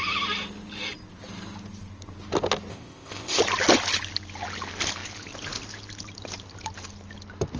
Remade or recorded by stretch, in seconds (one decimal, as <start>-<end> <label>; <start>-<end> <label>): 0.0-2.7 recorded; 2.7-3.4 remade; 3.4-7.6 recorded